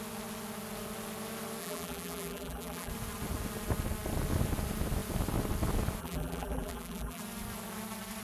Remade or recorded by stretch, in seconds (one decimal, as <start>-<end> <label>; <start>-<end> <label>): 0.0-1.6 recorded; 1.6-2.9 remade; 2.9-6.0 recorded; 6.0-7.2 remade; 7.2-8.2 recorded